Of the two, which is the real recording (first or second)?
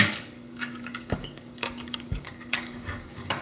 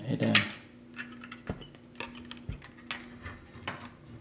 second